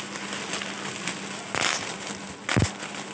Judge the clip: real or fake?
real